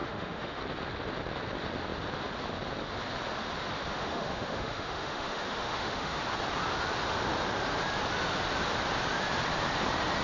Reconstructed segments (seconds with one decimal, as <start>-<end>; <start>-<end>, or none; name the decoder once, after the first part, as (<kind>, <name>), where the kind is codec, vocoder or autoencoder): 0.0-0.6 (autoencoder, DAC-VAE); 3.9-6.2